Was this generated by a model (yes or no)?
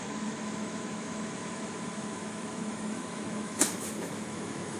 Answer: yes